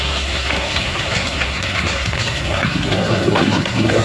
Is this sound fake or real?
fake